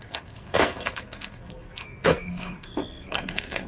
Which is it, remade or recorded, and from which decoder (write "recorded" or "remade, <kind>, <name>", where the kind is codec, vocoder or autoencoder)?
remade, codec, SNAC